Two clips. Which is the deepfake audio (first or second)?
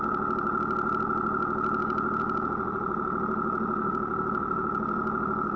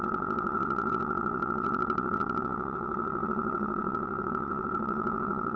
second